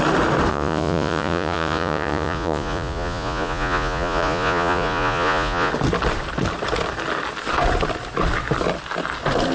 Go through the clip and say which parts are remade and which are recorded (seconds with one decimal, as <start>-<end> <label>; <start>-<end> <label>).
0.0-0.5 recorded; 0.5-5.7 remade; 5.7-9.5 recorded